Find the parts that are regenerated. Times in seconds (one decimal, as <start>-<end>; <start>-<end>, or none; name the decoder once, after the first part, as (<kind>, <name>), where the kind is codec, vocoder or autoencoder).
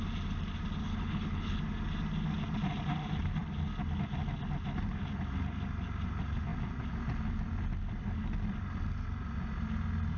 0.8-1.6 (codec, HILCodec)